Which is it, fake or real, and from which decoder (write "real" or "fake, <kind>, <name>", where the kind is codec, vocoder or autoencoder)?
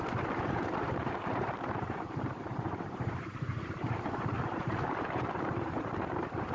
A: fake, vocoder, BigVGAN v2